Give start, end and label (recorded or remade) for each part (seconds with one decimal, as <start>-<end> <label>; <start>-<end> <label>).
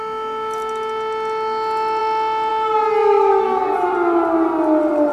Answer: 0.0-3.0 recorded; 3.0-3.6 remade; 3.6-5.1 recorded